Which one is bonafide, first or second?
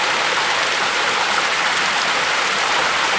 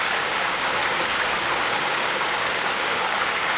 first